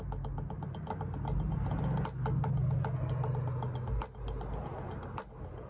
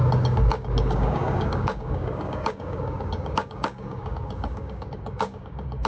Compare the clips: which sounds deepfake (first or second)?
second